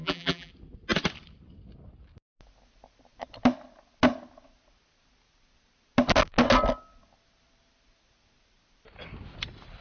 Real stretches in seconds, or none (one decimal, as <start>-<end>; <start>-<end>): 0.5-9.8

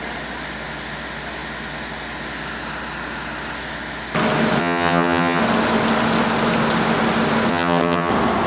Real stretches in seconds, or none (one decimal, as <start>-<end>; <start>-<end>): 0.0-4.6; 5.4-7.5; 8.1-8.5

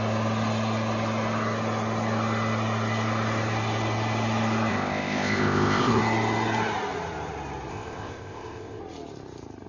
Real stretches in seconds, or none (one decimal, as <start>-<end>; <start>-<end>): 0.0-4.7; 6.0-7.7; 8.8-9.7

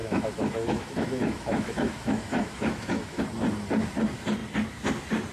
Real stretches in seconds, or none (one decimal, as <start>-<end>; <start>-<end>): 3.2-5.3

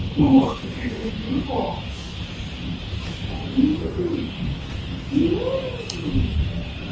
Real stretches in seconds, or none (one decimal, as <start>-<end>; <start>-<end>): 1.1-6.9

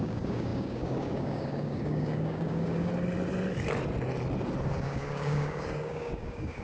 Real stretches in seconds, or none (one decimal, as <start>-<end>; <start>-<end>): 2.9-4.7